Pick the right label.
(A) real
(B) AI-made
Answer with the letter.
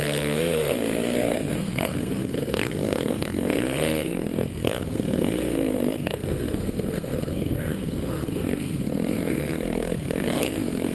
B